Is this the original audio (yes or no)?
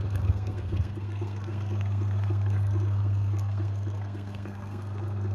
no